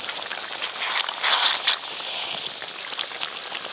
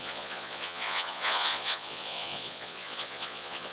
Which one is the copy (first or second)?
second